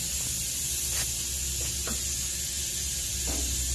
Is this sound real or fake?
real